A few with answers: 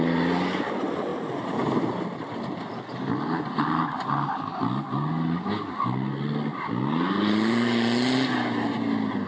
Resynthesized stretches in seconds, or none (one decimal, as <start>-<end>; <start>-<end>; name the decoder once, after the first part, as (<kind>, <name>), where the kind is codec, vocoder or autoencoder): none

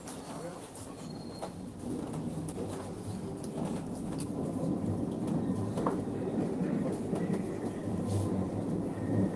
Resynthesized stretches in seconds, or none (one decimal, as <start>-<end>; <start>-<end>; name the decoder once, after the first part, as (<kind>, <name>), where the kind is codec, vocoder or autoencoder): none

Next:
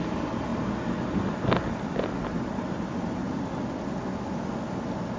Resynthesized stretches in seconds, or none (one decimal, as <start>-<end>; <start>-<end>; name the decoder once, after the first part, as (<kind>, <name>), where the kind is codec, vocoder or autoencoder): none

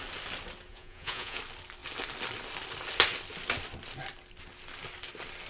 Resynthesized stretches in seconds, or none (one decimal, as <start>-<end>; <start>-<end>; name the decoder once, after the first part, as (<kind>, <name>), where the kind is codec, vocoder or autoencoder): 0.7-1.4 (vocoder, Vocos)

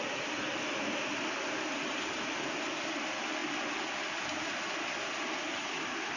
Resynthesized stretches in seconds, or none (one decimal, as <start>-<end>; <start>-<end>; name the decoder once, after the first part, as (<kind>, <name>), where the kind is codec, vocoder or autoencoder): none

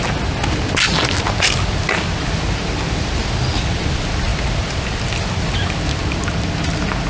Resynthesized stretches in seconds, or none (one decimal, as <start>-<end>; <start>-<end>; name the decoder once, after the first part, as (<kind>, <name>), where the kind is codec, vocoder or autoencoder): none